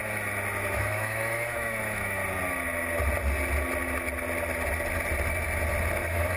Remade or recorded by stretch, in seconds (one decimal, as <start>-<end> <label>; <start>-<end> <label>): 0.0-0.7 recorded; 0.7-2.2 remade; 2.2-6.0 recorded; 6.0-6.4 remade